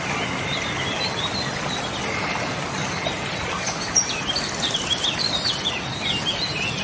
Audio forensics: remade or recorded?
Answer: recorded